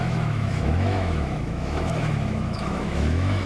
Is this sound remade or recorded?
remade